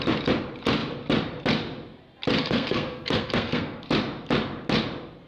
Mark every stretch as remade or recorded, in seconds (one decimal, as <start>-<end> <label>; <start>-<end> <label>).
0.0-2.4 recorded; 2.4-3.9 remade; 3.9-5.3 recorded